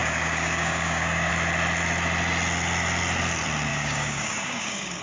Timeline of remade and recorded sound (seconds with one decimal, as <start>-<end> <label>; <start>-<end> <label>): 0.0-1.3 remade; 1.3-3.7 recorded; 3.7-5.0 remade